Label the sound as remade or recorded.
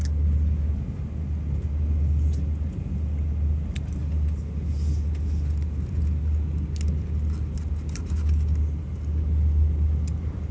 recorded